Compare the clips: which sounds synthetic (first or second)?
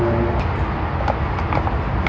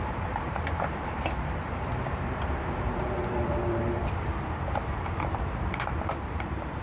second